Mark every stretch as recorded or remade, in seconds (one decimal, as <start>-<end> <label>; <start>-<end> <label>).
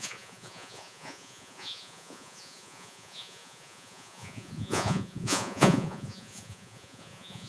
0.0-7.5 remade